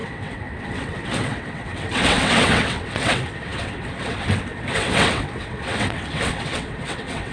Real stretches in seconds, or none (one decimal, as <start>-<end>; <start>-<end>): none